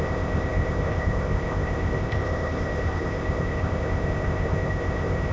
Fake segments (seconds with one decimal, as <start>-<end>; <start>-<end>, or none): 0.0-5.3